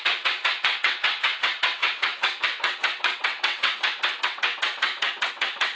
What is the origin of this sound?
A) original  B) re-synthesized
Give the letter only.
B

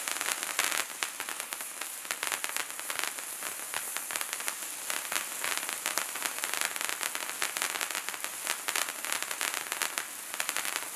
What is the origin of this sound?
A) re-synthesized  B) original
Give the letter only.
B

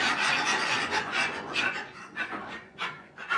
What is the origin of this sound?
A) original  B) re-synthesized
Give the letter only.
B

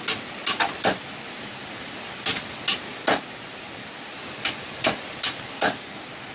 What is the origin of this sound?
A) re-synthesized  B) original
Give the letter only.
B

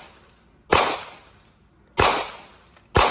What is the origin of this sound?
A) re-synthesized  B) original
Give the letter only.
B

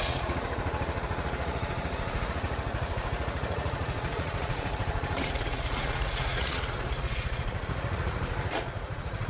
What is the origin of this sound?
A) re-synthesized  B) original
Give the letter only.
A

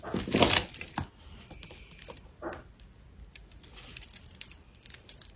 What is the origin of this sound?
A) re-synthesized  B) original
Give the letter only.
B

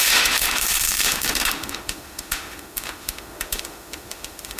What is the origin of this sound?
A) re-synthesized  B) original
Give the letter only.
A